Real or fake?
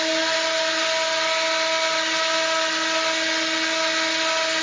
real